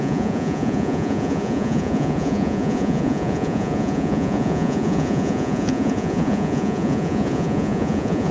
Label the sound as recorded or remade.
remade